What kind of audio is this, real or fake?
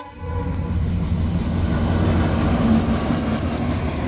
real